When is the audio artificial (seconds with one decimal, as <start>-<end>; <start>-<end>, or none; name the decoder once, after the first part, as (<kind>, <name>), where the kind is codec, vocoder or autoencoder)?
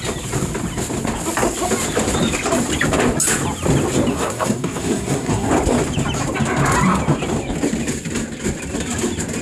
4.1-5.5 (codec, SNAC)